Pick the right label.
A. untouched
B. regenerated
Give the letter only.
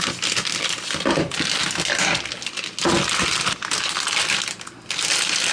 A